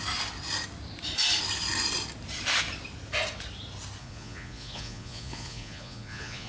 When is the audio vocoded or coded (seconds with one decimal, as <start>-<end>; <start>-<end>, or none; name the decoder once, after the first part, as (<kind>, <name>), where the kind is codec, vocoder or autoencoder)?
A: 4.0-6.5 (vocoder, Vocos)